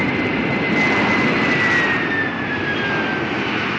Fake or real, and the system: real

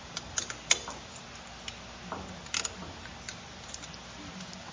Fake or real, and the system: real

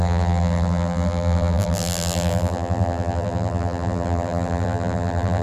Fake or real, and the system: fake, vocoder, BigVGAN v2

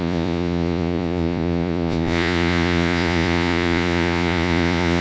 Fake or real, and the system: fake, vocoder, Vocos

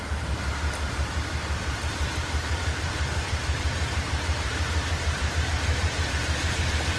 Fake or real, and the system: fake, vocoder, BigVGAN v2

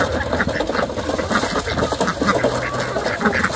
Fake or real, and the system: real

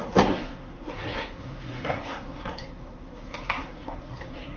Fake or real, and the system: fake, codec, SNAC